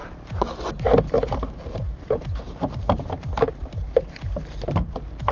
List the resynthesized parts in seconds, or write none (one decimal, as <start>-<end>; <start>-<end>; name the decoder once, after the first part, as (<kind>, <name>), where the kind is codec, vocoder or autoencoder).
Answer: 0.0-5.3 (vocoder, BigVGAN v2)